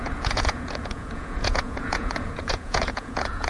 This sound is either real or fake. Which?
fake